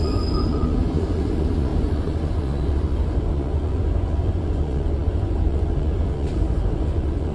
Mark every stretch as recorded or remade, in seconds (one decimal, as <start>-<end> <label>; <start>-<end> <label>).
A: 0.0-7.3 remade